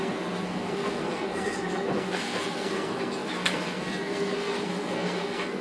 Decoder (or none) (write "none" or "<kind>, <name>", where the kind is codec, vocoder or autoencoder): codec, SNAC